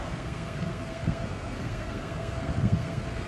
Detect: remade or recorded remade